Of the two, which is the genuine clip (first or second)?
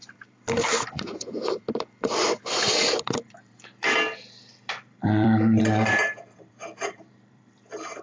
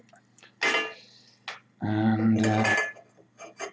second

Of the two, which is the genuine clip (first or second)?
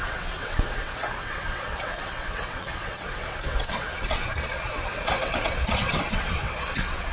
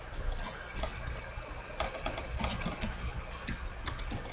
second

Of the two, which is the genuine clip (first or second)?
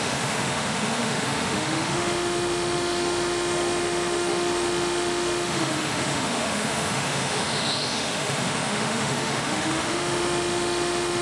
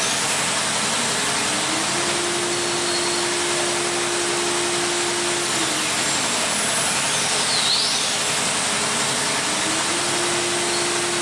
second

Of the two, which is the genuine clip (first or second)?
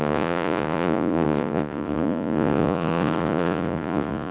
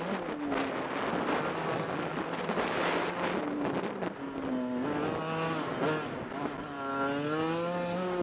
second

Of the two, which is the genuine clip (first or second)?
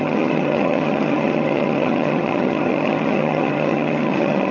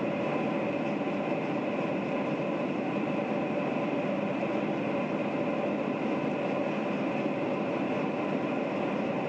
second